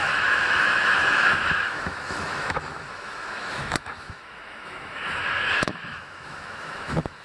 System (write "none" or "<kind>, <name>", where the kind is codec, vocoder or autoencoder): autoencoder, DAC-VAE